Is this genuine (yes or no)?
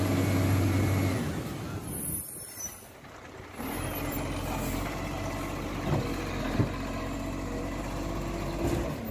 yes